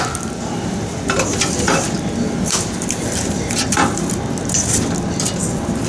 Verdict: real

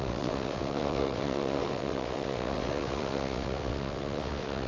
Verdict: fake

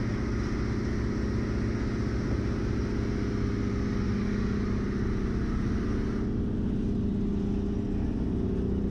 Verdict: real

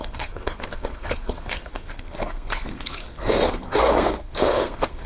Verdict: fake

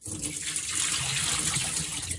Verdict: real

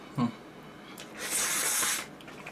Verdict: real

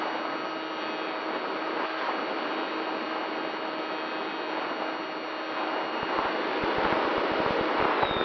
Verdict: real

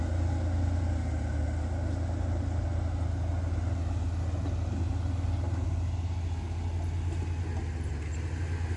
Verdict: real